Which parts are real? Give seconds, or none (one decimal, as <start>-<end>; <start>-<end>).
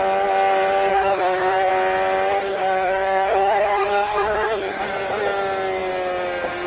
0.0-0.9; 1.7-2.5; 4.8-6.7